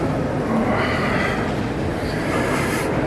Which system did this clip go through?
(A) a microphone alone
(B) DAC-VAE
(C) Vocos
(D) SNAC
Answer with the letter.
A